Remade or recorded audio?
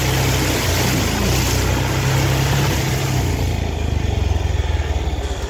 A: recorded